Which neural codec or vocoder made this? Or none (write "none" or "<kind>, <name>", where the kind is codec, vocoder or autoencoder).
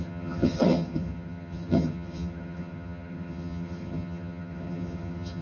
vocoder, HiFi-GAN